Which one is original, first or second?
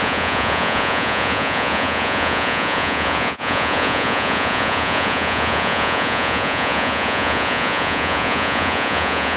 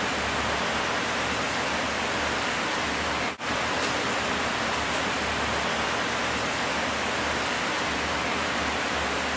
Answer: second